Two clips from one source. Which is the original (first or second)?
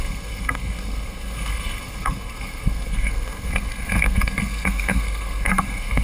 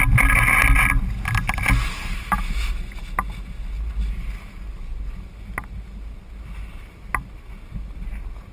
second